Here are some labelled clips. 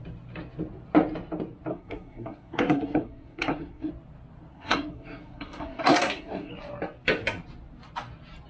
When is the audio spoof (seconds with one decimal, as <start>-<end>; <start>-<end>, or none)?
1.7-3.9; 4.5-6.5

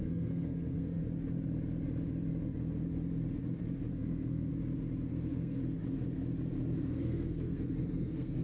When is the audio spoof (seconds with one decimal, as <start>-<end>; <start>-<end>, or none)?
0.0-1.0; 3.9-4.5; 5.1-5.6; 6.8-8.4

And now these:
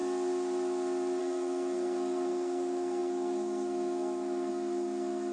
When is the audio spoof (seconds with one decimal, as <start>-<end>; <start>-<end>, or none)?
1.2-5.3